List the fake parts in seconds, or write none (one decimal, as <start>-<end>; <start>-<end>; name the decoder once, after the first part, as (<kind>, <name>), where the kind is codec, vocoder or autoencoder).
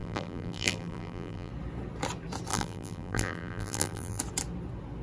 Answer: 0.0-1.5 (vocoder, BigVGAN v2); 2.5-4.2